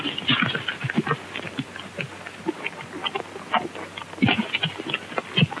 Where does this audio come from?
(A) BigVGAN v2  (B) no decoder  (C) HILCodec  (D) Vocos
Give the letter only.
B